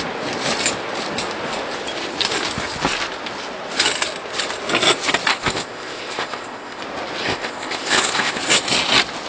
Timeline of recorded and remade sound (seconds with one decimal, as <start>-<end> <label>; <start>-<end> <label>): 0.0-5.3 recorded; 5.3-6.8 remade; 6.8-7.2 recorded; 7.2-8.4 remade; 8.4-9.3 recorded